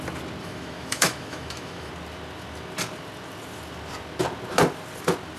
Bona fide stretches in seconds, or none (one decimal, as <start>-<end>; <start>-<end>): 0.0-0.4; 1.9-5.4